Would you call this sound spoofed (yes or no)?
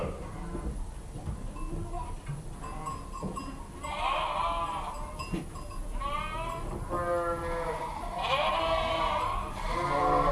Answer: no